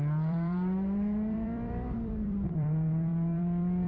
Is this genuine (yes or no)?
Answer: no